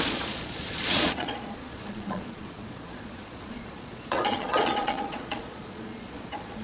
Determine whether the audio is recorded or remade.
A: remade